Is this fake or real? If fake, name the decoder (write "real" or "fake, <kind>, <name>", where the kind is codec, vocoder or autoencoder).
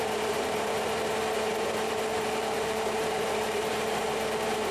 fake, vocoder, BigVGAN v2